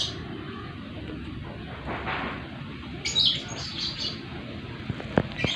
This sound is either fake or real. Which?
real